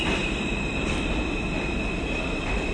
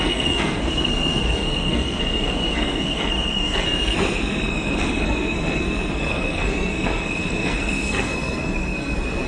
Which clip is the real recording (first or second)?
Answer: first